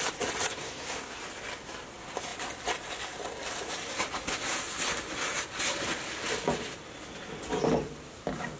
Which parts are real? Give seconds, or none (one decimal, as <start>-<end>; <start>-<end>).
0.0-0.5; 1.2-8.6